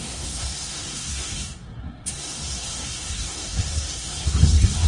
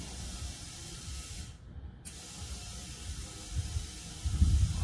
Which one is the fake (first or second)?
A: first